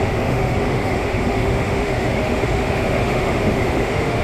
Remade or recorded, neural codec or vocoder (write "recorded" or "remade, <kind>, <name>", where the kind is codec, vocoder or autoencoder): remade, autoencoder, DAC-VAE